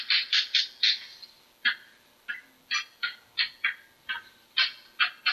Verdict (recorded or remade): recorded